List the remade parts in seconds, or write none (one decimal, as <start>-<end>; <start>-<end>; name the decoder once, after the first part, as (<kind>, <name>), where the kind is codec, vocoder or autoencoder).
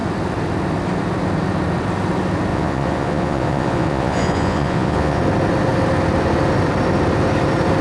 2.5-5.2 (vocoder, Vocos)